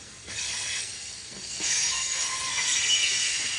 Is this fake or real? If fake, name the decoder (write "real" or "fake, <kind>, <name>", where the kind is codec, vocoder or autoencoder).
fake, codec, SNAC